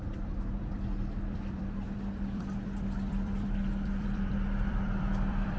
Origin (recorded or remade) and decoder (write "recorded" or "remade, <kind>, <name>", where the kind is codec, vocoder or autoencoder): remade, vocoder, BigVGAN v2